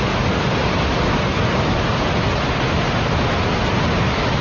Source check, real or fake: real